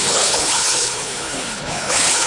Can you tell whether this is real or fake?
fake